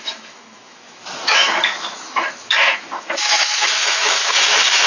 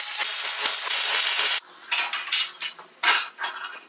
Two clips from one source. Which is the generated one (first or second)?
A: first